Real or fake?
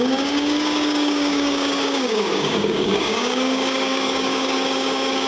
fake